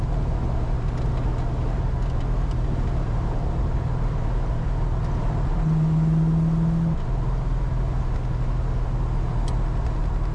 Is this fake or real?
real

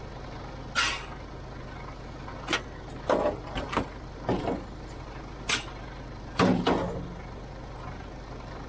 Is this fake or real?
real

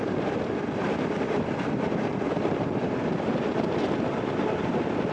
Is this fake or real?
real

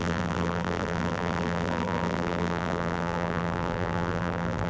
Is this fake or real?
fake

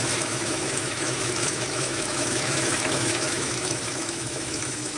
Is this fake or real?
fake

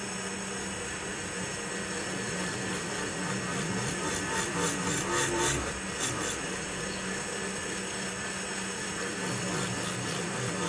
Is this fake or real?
real